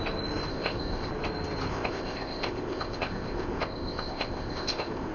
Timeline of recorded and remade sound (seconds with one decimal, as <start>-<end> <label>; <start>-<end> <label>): 0.0-0.5 recorded; 0.5-1.1 remade; 1.1-1.7 recorded; 1.7-5.1 remade